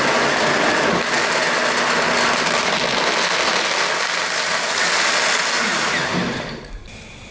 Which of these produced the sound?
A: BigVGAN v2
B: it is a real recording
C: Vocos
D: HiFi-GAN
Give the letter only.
B